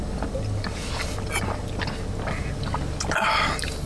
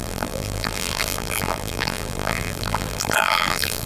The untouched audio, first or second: first